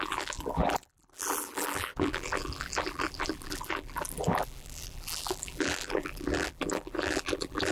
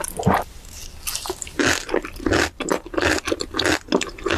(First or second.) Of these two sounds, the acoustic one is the second